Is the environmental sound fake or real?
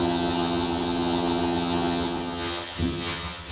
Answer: fake